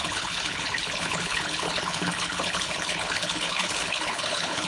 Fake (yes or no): yes